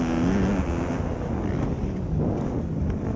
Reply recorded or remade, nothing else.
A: recorded